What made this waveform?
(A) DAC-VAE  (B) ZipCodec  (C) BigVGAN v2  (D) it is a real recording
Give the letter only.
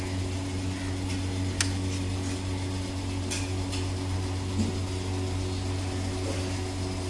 D